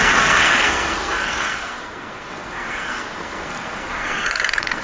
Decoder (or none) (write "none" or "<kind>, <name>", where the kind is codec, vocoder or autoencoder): codec, SNAC